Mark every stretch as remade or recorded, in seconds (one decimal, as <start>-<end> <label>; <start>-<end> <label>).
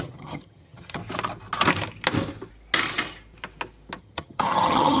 0.0-1.0 remade; 1.0-4.0 recorded; 4.0-5.0 remade